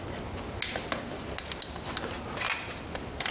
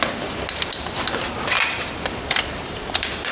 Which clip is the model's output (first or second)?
second